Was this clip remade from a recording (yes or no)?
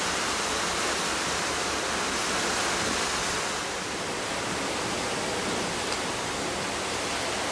no